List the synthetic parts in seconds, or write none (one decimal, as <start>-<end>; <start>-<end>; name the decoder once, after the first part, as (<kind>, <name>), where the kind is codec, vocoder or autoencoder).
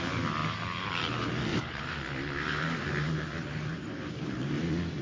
1.5-4.5 (vocoder, BigVGAN v2)